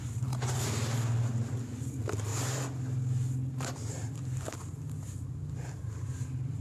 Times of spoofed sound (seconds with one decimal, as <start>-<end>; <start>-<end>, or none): none